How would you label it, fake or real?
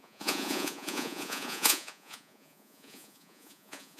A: fake